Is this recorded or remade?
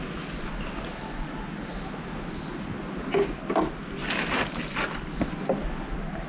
recorded